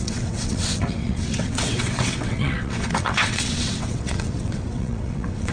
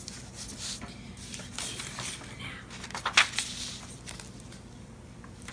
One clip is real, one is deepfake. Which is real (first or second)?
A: second